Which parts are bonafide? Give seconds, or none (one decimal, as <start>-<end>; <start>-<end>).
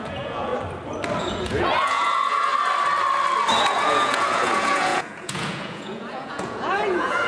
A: 0.5-1.2; 2.5-3.6